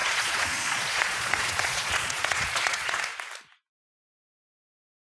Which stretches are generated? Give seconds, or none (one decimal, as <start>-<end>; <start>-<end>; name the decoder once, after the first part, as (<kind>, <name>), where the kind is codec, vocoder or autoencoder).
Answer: 0.0-3.0 (vocoder, Vocos)